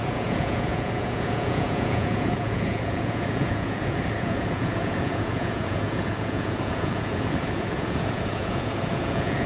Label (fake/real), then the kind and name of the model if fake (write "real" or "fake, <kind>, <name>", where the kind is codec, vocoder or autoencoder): fake, vocoder, Vocos